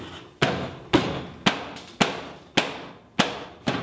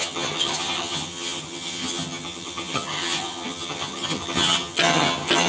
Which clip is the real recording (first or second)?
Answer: first